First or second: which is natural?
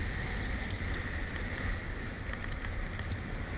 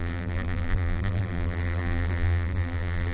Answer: first